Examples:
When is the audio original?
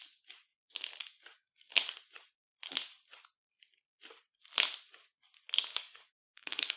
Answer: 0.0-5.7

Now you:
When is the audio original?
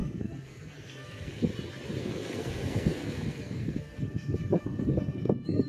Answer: 1.5-2.0